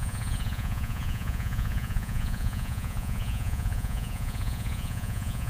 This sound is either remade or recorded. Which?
remade